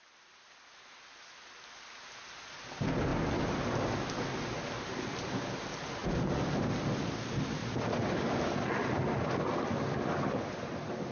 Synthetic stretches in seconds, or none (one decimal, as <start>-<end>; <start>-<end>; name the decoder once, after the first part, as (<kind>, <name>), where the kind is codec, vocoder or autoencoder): none